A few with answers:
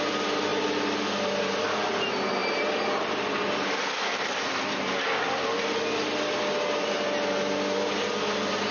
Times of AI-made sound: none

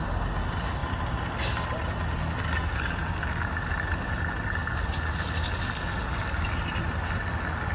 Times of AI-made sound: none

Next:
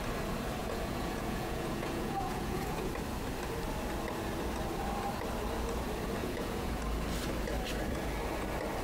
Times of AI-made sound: 0.6-2.9 (vocoder, Vocos); 6.2-6.8